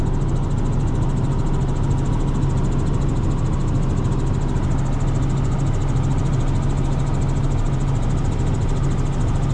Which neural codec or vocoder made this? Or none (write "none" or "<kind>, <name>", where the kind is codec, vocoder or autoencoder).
none